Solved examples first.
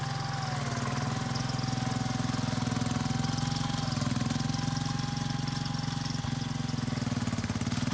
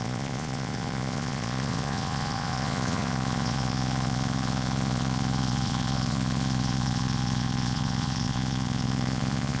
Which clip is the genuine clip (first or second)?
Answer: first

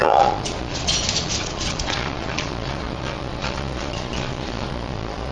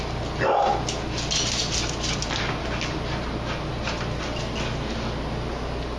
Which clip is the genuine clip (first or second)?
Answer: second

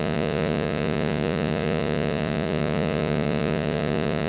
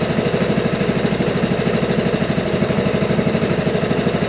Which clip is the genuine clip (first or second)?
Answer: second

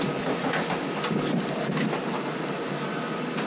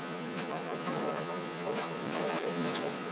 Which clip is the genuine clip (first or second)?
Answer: first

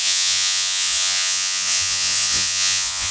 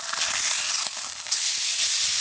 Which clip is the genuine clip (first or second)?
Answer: second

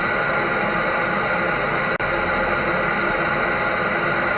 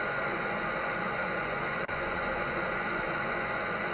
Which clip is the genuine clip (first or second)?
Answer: first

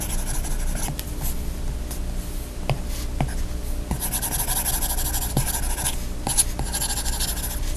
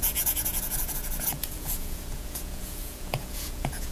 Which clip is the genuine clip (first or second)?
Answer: first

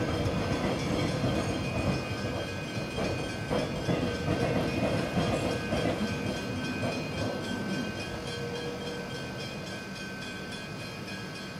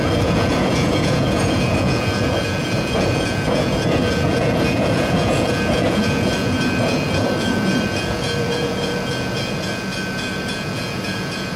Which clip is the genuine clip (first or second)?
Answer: first